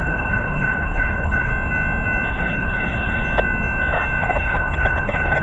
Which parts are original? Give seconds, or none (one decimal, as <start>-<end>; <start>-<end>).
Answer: 1.5-2.3; 3.2-4.2